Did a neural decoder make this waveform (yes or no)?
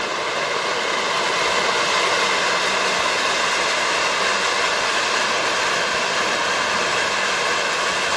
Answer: no